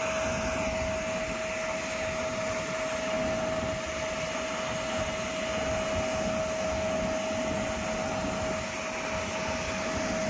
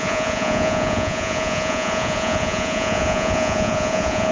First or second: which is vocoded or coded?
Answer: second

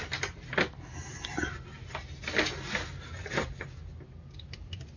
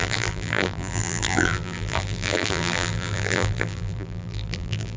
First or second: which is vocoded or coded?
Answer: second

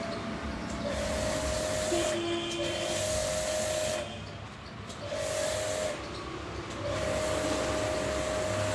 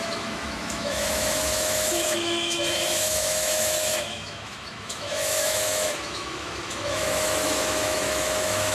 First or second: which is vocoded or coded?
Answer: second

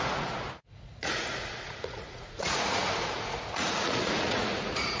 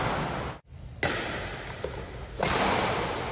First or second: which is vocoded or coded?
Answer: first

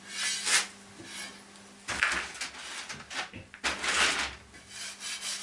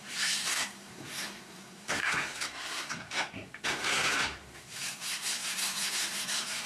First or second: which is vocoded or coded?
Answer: second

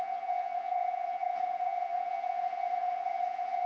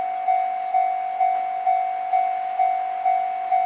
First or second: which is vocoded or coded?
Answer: first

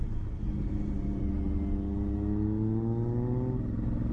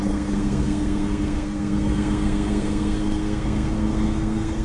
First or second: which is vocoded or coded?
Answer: second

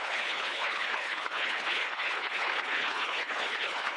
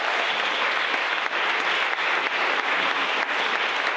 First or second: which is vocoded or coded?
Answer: first